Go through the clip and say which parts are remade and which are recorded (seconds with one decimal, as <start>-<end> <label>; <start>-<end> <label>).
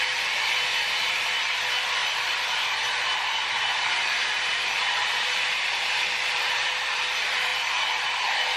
0.0-7.5 remade; 7.5-8.2 recorded; 8.2-8.6 remade